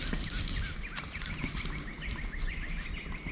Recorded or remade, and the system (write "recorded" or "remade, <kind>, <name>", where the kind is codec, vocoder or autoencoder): recorded